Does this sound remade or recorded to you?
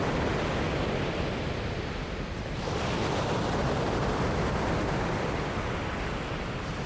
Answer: recorded